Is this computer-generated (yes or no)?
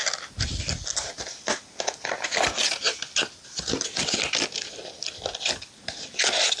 no